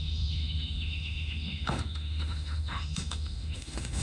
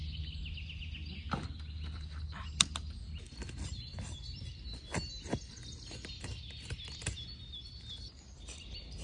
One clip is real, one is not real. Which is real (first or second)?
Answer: second